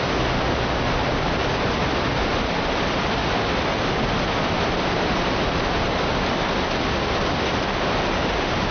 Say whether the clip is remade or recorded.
recorded